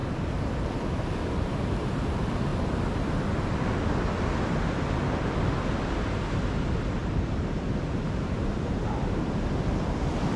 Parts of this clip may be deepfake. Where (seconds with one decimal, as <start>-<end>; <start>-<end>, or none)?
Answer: 0.0-1.5; 7.0-8.9